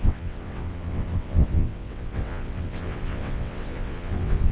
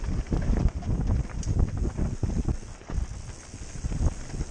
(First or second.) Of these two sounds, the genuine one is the second